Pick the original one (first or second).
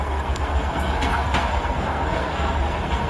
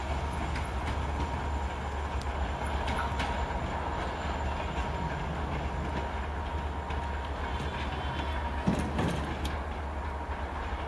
second